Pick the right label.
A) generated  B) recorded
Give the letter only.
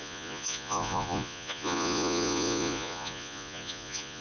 A